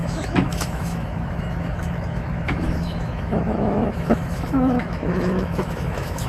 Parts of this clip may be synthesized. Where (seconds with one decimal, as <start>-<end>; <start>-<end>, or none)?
0.0-6.3